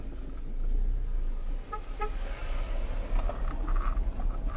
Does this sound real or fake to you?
real